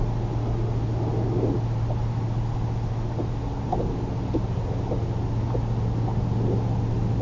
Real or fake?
real